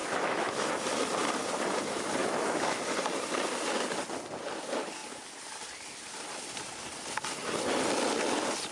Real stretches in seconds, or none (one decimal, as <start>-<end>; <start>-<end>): 0.7-2.2; 2.8-8.7